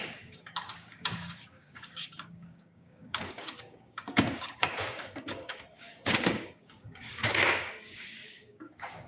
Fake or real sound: fake